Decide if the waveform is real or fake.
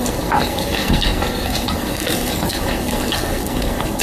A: fake